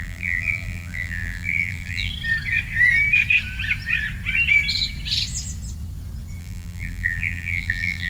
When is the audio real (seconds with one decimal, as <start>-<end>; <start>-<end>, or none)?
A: 2.1-6.4